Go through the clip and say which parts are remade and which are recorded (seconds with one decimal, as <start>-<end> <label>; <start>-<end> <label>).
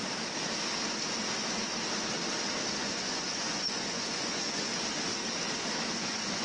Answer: 0.0-2.8 recorded; 2.8-4.7 remade; 4.7-5.9 recorded; 5.9-6.4 remade